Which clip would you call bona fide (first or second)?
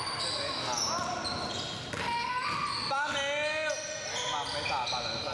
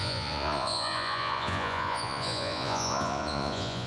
first